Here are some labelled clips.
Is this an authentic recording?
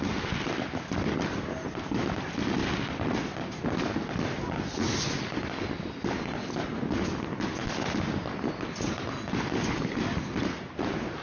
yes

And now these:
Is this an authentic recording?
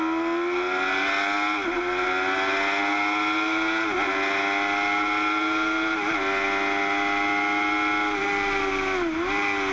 yes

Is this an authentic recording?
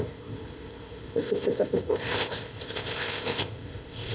no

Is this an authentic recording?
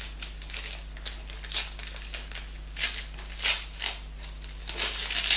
yes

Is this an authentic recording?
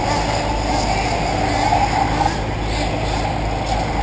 yes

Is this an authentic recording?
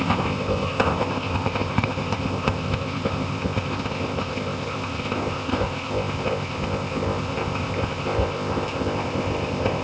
no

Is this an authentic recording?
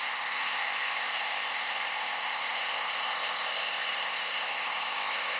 no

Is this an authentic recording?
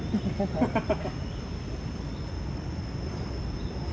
yes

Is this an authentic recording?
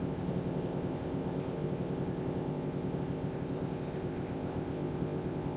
no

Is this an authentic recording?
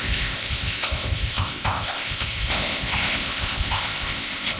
no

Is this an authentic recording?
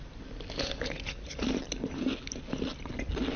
yes